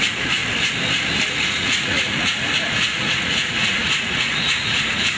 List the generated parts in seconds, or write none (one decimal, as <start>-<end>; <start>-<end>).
0.0-0.4; 1.3-5.2